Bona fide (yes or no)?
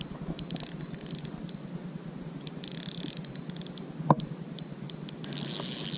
yes